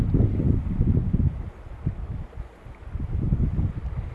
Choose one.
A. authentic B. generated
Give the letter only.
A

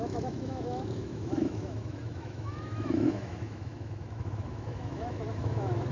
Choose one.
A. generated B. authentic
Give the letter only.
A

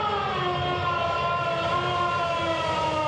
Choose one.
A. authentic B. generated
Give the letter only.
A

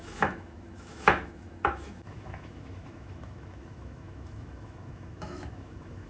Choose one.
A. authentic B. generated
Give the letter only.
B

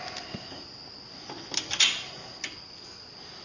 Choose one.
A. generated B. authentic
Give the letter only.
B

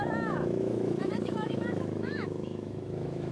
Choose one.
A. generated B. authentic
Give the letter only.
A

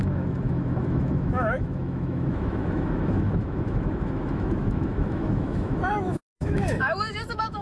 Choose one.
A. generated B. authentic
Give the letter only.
A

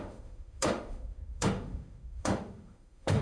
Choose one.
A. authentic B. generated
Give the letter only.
B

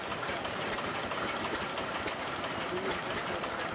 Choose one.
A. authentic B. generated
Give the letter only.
A